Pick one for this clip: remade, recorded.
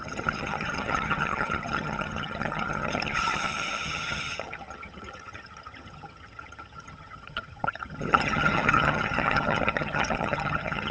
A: remade